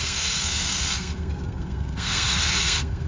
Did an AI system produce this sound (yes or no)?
yes